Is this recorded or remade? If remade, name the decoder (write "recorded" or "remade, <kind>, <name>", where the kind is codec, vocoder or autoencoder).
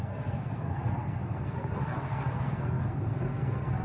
remade, codec, SNAC